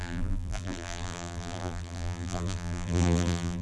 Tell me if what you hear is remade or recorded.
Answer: remade